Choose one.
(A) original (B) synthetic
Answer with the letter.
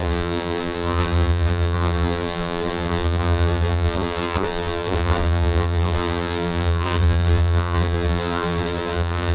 B